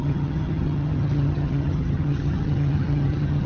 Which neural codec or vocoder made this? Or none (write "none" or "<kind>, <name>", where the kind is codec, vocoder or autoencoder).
vocoder, HiFi-GAN